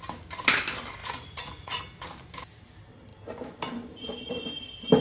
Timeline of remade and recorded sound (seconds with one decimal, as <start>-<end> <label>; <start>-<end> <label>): 0.0-1.0 recorded; 1.0-1.8 remade; 1.8-5.0 recorded